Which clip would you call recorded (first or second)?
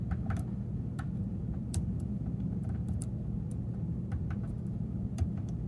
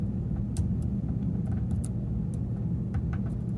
second